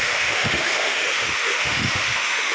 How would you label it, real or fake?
fake